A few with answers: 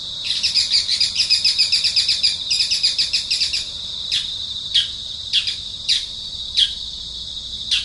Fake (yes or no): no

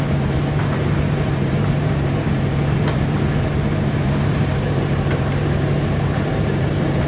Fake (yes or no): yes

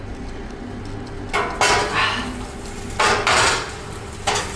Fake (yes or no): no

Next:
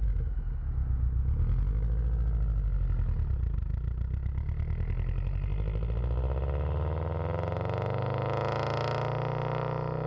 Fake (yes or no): no